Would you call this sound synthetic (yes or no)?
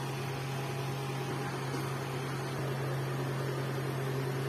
no